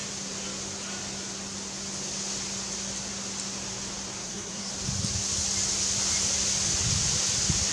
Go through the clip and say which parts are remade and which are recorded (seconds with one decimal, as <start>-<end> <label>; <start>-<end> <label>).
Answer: 0.0-4.2 recorded; 4.2-4.7 remade; 4.7-7.7 recorded